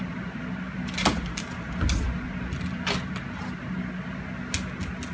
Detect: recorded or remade recorded